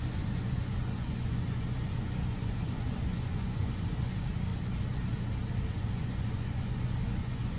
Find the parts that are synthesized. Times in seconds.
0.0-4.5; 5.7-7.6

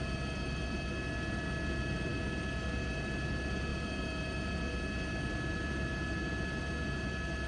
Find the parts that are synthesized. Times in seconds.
none

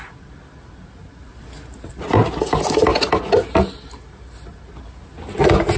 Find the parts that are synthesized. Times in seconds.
none

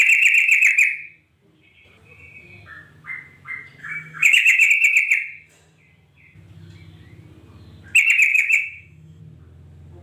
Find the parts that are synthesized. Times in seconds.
3.8-4.7; 8.3-9.2

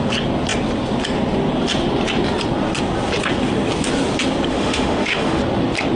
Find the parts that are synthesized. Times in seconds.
4.5-5.4

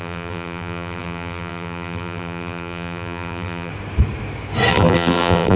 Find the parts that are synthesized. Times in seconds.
0.0-3.7; 4.7-5.6

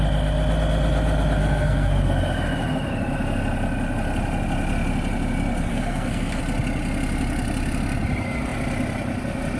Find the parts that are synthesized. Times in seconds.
1.4-2.0; 5.7-6.4